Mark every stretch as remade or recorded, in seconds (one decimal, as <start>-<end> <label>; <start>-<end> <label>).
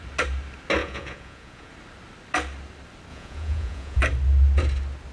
0.0-0.8 recorded; 0.8-1.7 remade; 1.7-3.1 recorded; 3.1-4.0 remade; 4.0-5.1 recorded